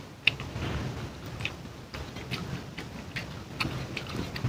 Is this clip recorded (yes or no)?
yes